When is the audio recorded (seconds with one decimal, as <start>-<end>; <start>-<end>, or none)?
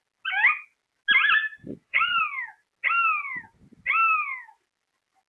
0.0-1.5; 2.2-5.3